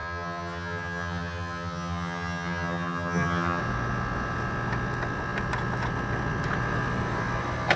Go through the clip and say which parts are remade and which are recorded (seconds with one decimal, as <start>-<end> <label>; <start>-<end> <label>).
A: 0.0-3.6 remade; 3.6-7.8 recorded